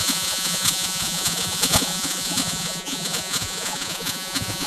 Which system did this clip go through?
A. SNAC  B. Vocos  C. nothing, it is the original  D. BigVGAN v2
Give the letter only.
B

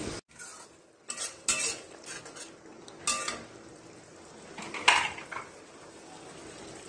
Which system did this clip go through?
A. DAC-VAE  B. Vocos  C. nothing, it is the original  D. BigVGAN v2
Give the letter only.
C